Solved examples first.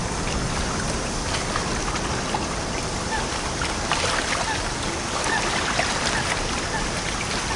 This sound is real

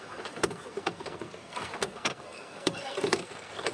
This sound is fake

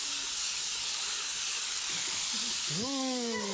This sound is fake